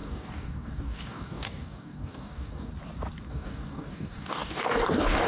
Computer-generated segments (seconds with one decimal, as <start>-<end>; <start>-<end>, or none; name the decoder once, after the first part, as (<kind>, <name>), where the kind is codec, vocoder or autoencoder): 0.0-2.7 (codec, DAC); 3.3-5.3